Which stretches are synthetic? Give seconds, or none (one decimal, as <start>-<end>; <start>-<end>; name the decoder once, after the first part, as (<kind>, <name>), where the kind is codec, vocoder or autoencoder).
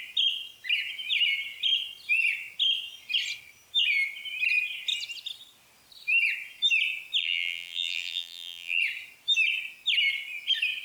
7.2-8.8 (vocoder, BigVGAN v2)